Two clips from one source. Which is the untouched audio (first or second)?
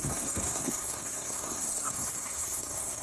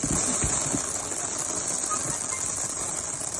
second